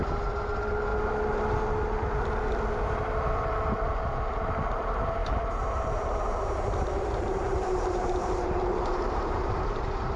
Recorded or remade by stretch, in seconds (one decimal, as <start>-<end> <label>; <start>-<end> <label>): 0.0-5.2 recorded; 5.2-10.2 remade